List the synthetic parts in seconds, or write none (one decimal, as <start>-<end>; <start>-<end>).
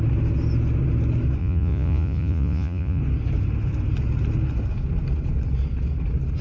1.4-3.0